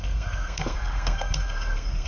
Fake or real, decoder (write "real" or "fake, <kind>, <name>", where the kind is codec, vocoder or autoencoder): fake, codec, SNAC